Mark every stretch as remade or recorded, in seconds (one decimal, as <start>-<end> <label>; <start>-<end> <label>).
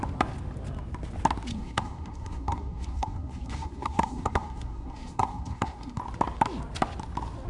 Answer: 0.0-1.5 recorded; 1.5-6.0 remade; 6.0-7.5 recorded